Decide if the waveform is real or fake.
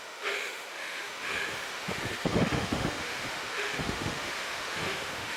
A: fake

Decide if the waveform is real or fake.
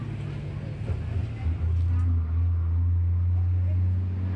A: real